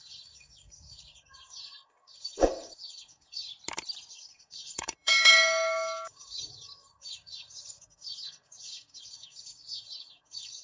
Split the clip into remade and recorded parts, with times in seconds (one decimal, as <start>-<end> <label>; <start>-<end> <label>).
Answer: 0.0-3.5 remade; 3.5-4.1 recorded; 4.1-10.6 remade